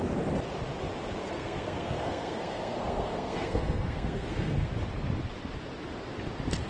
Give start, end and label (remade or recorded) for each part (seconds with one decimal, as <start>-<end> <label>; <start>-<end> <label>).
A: 0.0-1.2 recorded; 1.2-4.7 remade; 4.7-6.7 recorded

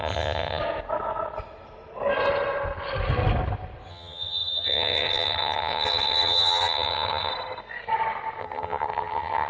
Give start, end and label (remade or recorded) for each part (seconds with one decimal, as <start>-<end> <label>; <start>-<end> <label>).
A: 0.0-0.6 remade; 0.6-3.9 recorded; 3.9-7.3 remade; 7.3-8.4 recorded; 8.4-9.5 remade

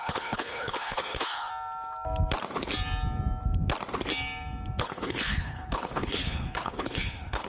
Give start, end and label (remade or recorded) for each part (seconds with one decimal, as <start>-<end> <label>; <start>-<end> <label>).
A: 0.0-1.5 remade; 1.5-4.8 recorded; 4.8-7.5 remade